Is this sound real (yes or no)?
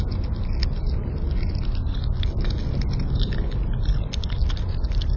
yes